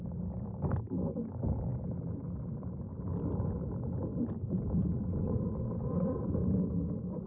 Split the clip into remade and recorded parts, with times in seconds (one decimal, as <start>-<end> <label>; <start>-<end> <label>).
0.0-1.7 recorded; 1.7-3.1 remade; 3.1-4.1 recorded; 4.1-6.6 remade; 6.6-7.3 recorded